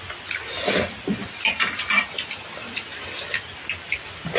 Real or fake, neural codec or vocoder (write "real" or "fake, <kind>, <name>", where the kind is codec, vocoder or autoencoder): real